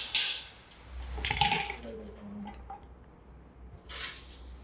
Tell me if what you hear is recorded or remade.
recorded